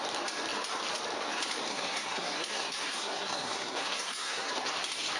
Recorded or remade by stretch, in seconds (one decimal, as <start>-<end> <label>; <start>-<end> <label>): 0.0-1.7 recorded; 1.7-4.5 remade; 4.5-5.2 recorded